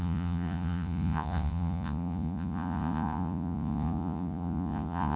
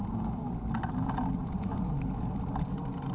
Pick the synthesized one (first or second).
first